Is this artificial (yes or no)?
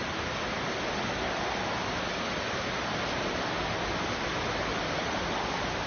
no